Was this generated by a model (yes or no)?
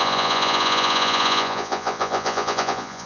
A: yes